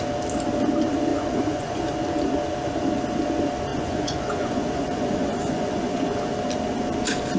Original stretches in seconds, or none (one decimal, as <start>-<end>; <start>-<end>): 0.0-1.1; 1.8-3.7; 6.2-7.4